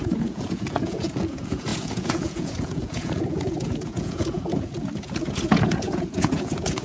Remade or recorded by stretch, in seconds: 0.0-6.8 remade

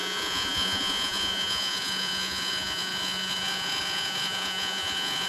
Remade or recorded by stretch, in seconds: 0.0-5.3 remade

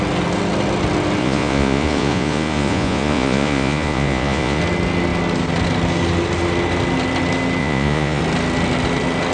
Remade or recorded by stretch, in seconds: 0.0-1.2 recorded; 1.2-4.6 remade; 4.6-7.6 recorded; 7.6-8.2 remade; 8.2-9.3 recorded